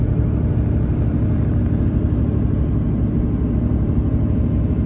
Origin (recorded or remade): recorded